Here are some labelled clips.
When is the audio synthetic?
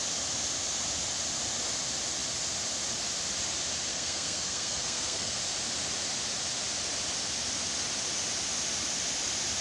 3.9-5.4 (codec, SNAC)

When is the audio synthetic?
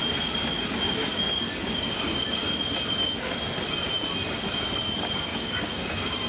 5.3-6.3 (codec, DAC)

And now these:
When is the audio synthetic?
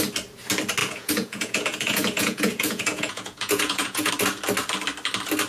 0.8-4.1 (vocoder, Vocos)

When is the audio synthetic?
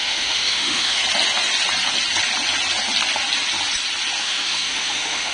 0.0-1.0 (autoencoder, DAC-VAE); 4.2-5.3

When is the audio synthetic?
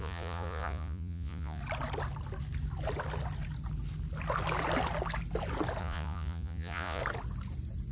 0.0-1.6 (vocoder, Vocos); 5.8-7.0